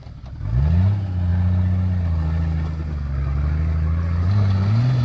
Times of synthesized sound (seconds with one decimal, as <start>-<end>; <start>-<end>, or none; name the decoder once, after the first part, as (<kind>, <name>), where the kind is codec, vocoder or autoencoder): none